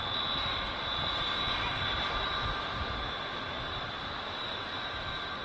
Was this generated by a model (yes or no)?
no